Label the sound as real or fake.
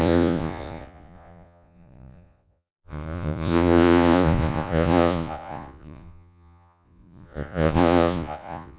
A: fake